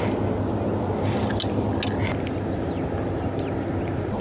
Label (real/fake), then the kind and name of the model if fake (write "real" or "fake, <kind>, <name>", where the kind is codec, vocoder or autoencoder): real